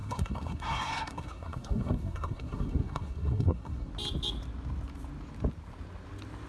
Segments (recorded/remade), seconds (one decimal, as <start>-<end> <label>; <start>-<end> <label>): 0.0-3.9 remade; 3.9-6.5 recorded